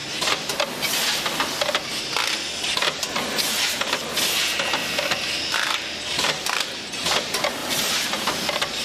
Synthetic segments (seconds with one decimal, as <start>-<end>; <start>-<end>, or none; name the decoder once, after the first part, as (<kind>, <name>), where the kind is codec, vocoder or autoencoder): 4.8-6.6 (vocoder, BigVGAN v2); 7.6-8.8